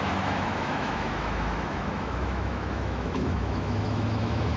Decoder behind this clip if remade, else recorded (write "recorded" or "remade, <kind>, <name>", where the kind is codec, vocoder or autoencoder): remade, autoencoder, DAC-VAE